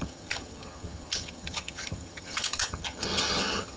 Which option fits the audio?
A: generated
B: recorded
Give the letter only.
A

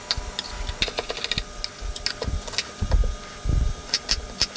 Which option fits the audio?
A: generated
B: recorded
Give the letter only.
B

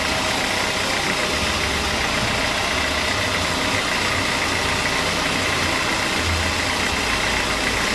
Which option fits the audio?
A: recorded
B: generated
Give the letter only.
A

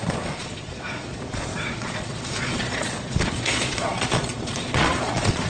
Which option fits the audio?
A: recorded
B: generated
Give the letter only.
B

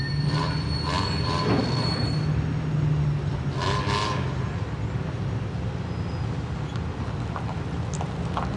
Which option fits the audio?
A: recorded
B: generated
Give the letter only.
A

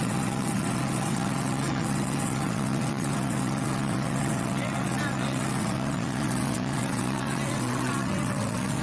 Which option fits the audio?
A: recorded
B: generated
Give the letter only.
B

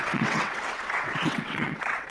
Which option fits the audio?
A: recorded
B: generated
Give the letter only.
B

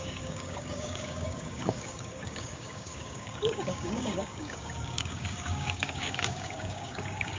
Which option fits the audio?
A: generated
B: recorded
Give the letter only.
A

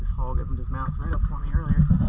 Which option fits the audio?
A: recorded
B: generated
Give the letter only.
A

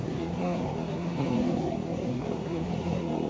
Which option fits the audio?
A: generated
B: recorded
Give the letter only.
A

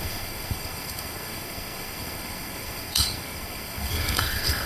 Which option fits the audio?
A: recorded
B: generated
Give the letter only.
B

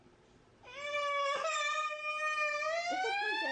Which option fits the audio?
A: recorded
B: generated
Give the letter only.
A